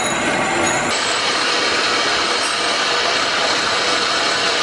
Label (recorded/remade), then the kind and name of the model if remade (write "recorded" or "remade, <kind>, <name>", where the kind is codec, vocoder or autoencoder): recorded